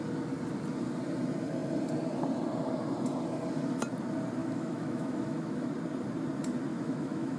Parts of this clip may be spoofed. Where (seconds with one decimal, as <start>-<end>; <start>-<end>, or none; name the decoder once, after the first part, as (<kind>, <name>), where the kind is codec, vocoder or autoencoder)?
4.4-5.7 (autoencoder, DAC-VAE); 6.7-7.4